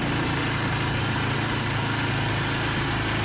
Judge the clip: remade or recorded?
recorded